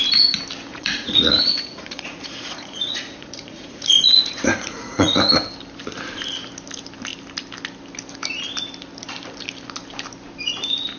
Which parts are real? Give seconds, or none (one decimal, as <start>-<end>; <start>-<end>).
0.0-0.7; 5.2-11.0